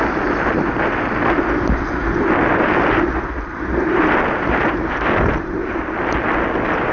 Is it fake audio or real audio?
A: real